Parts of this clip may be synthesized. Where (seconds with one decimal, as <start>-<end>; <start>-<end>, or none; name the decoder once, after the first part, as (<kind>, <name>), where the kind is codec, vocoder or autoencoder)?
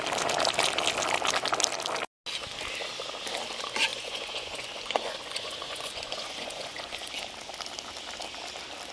3.9-7.2 (vocoder, Vocos)